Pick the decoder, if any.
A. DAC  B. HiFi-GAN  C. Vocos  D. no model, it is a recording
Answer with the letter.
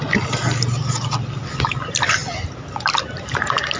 D